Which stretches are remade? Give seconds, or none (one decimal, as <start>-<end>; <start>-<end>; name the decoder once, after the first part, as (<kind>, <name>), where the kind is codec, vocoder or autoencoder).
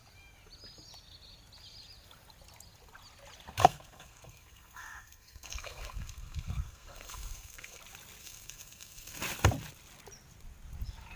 3.6-7.8 (codec, SNAC); 8.2-9.2